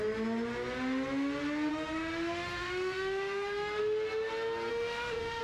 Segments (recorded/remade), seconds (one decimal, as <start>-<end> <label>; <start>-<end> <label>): 0.0-1.7 recorded; 1.7-3.8 remade; 3.8-4.7 recorded; 4.7-5.4 remade